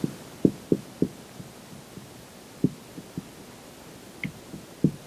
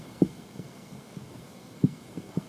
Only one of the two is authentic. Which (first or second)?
first